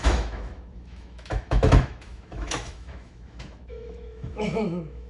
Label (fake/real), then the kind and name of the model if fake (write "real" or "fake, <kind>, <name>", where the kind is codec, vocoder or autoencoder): fake, autoencoder, DAC-VAE